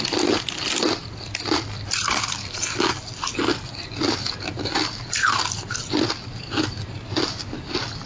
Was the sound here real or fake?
fake